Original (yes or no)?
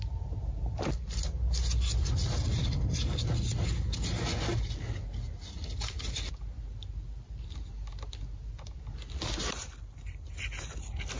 yes